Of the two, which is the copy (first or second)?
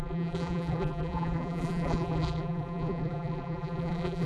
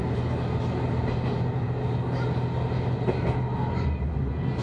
first